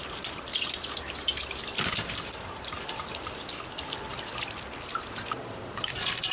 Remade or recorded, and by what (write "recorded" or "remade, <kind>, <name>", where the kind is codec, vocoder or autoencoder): recorded